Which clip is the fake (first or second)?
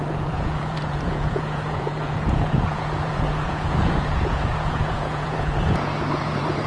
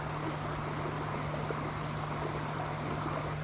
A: first